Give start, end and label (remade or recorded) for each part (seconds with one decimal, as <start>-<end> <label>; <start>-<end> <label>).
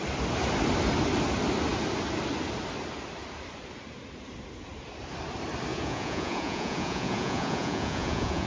0.0-5.7 recorded; 5.7-8.5 remade